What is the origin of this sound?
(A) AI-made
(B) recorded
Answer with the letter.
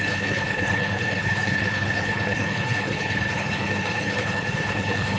A